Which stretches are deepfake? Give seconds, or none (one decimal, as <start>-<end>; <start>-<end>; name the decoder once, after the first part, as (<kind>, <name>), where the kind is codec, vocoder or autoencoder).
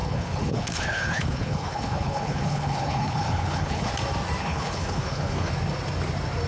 0.0-3.9 (codec, HILCodec); 4.4-5.5